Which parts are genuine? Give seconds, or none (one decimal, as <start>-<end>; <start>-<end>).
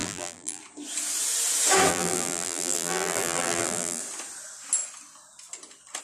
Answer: 0.6-1.9; 4.0-6.0